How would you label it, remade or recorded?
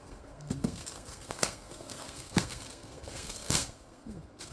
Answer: remade